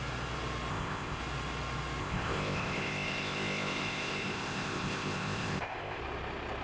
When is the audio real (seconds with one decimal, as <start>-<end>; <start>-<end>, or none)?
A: 0.0-0.7; 1.2-2.0; 6.0-6.6